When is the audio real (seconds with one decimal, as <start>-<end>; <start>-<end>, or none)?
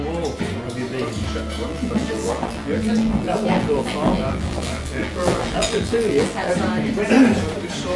0.0-1.7; 6.5-8.0